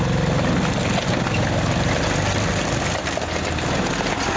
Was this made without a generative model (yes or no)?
yes